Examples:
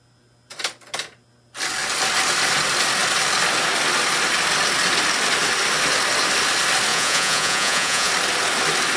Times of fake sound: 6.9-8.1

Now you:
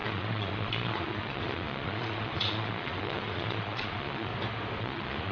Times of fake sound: 0.0-4.3; 4.8-5.3

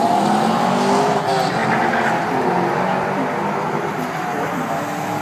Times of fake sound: none

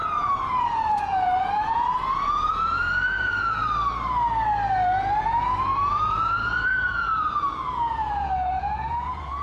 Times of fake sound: 0.0-3.6; 5.2-9.4

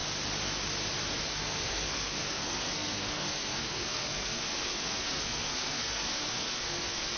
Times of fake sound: 1.1-7.2